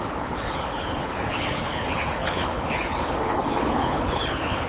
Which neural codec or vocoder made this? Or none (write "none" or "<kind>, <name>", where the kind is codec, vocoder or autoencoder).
codec, HILCodec